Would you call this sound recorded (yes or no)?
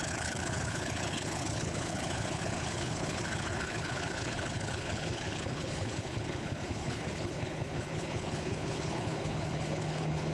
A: no